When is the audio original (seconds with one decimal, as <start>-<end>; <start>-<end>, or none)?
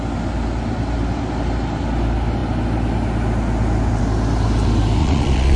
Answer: 0.0-5.0